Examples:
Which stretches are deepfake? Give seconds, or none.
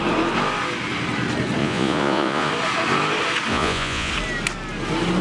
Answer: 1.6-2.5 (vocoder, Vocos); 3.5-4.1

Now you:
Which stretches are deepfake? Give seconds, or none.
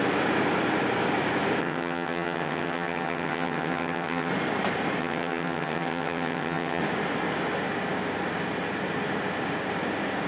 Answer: 1.6-4.3 (vocoder, HiFi-GAN); 5.0-6.8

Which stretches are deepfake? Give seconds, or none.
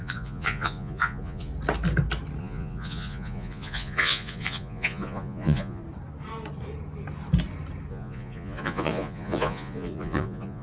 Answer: 0.0-1.5 (vocoder, Vocos); 2.4-5.8; 7.9-10.6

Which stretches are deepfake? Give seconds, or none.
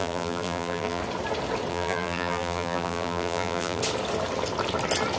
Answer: 0.0-1.0 (vocoder, BigVGAN v2); 1.7-3.8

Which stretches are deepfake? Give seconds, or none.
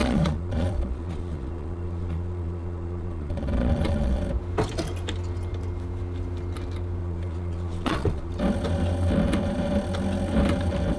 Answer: 0.0-4.2 (vocoder, Vocos); 7.0-8.3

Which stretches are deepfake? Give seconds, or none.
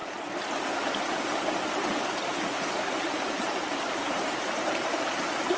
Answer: 2.3-5.6 (vocoder, BigVGAN v2)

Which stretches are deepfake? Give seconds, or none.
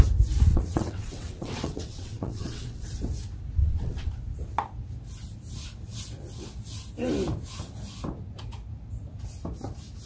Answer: 0.5-2.9 (vocoder, WaveNeXt); 3.6-4.1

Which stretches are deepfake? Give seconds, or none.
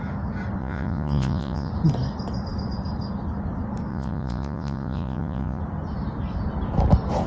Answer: 0.6-1.7 (vocoder, Vocos); 3.9-5.6